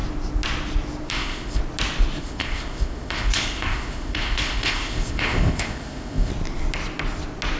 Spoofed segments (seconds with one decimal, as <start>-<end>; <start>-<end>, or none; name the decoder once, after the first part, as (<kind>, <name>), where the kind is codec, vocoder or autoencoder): 1.1-1.6 (codec, ZipCodec); 2.2-6.3